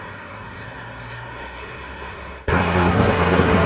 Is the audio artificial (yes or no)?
yes